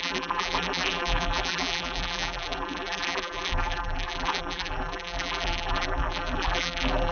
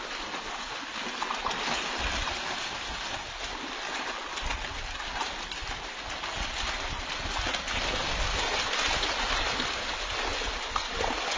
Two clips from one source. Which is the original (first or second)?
second